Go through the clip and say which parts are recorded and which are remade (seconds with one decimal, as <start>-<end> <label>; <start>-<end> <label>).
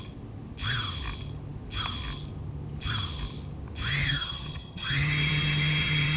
0.0-4.0 recorded; 4.0-6.2 remade